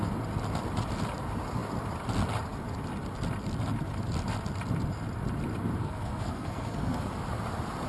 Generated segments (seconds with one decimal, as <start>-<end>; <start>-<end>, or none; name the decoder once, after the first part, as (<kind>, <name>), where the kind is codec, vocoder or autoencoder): 5.8-7.1 (codec, SNAC)